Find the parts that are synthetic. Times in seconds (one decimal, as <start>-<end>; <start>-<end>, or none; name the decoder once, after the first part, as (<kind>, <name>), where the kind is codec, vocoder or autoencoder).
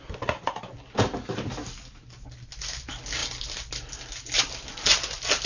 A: none